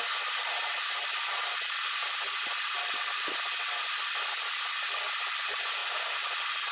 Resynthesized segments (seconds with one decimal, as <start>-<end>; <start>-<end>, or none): none